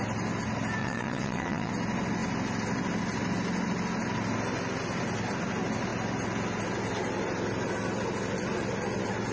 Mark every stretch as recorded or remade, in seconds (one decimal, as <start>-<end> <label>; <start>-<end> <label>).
0.0-0.8 recorded; 0.8-1.7 remade; 1.7-9.3 recorded